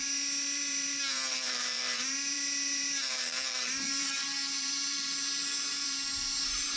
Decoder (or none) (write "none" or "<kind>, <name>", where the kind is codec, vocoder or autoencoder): vocoder, BigVGAN v2